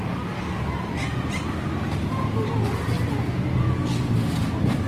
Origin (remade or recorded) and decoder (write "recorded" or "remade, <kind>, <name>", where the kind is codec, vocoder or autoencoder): recorded